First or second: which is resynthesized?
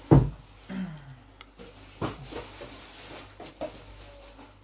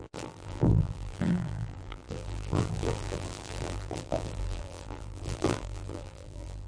second